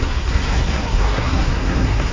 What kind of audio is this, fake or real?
fake